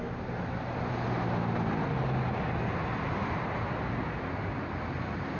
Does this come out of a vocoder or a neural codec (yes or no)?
no